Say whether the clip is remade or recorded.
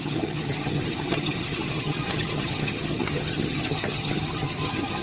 remade